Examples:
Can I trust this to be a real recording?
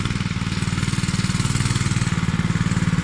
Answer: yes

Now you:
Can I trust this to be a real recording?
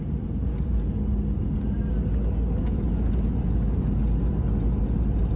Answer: yes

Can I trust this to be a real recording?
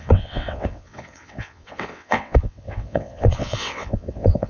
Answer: no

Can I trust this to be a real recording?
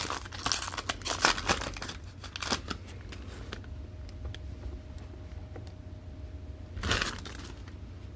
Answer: yes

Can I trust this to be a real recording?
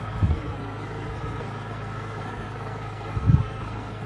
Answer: no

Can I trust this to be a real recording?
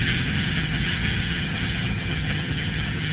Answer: no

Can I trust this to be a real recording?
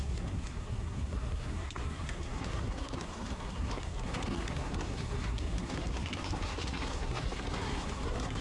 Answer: no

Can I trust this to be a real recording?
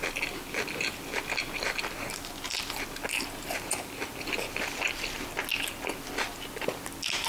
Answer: yes